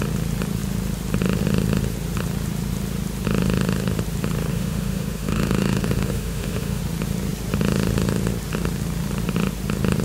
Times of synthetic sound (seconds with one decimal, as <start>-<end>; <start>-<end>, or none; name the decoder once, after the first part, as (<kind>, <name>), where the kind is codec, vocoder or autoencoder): 4.5-6.8 (autoencoder, DAC-VAE)